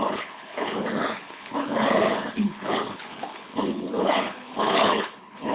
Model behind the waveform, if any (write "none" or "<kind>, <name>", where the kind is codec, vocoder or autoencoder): codec, HILCodec